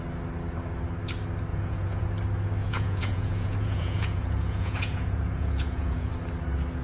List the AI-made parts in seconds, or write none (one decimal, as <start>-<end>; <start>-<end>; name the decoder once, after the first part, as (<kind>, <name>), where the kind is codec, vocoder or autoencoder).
1.5-2.1 (vocoder, Vocos); 2.6-6.1